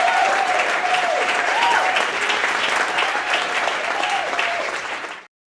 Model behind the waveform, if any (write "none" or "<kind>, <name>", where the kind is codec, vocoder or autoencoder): vocoder, BigVGAN v2